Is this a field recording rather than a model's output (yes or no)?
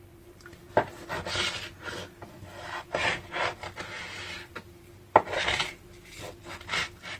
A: yes